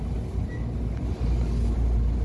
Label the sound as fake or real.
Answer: real